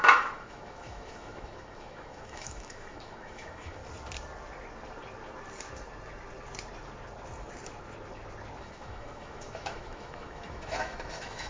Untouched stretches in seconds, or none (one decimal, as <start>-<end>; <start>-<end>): 3.8-8.6